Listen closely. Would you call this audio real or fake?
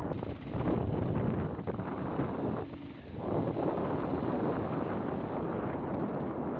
real